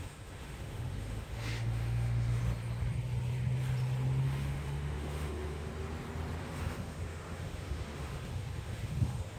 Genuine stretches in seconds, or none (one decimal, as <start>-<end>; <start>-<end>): 2.4-4.2; 5.7-6.4